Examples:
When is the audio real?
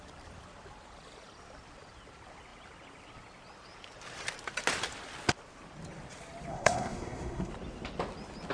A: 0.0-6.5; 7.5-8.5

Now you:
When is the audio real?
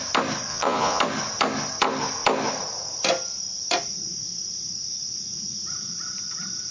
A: 0.0-0.5; 1.0-6.7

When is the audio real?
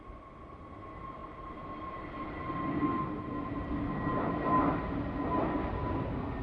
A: 0.0-1.2; 2.6-6.4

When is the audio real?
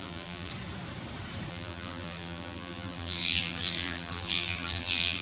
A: 0.5-1.5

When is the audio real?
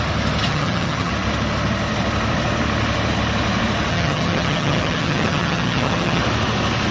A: 0.0-0.5; 1.1-3.9; 6.2-6.9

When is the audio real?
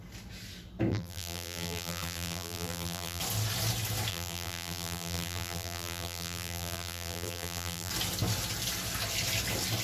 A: 0.0-0.9; 3.2-4.1; 7.9-9.8